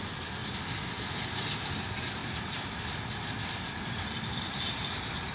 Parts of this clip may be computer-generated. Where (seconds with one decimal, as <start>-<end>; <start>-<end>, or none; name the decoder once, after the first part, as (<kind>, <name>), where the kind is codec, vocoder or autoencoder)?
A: 0.0-2.2 (vocoder, BigVGAN v2); 3.7-5.3